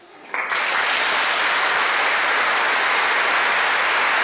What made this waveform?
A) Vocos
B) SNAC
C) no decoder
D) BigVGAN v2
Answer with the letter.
C